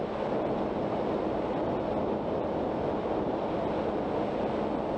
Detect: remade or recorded recorded